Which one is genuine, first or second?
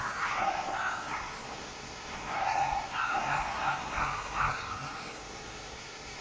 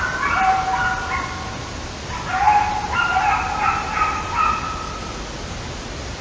second